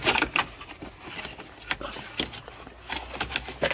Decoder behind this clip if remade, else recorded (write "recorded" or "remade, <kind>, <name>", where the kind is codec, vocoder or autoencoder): recorded